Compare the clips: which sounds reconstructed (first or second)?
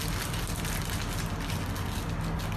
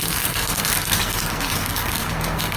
second